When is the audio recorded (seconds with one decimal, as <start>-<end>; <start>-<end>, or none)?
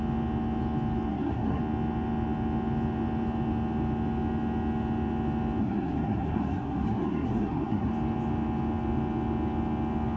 0.0-1.1; 1.6-5.6; 7.9-10.2